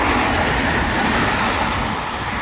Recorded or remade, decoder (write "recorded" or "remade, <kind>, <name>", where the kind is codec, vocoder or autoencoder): recorded